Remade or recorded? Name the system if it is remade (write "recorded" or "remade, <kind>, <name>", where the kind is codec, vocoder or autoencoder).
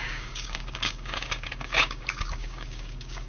remade, codec, DAC